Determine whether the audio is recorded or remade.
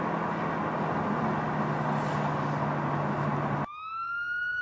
recorded